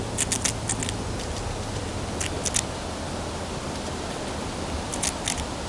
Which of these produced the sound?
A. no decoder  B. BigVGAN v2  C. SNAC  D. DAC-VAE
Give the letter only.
A